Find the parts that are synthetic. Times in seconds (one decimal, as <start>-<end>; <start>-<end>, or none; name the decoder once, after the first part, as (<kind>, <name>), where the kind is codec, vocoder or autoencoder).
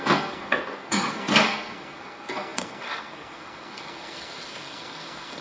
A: 0.0-5.4 (codec, SNAC)